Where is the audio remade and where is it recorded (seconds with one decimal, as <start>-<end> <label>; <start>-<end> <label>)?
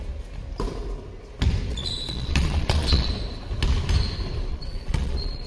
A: 0.0-1.7 recorded; 1.7-3.1 remade; 3.1-4.5 recorded; 4.5-5.5 remade